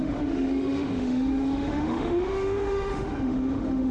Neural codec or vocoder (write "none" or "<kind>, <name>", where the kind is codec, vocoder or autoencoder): autoencoder, DAC-VAE